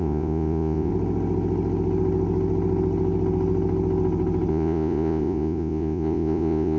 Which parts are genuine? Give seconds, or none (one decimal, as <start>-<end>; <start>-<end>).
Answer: 0.9-4.5